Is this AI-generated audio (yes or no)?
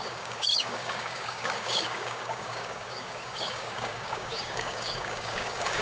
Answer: yes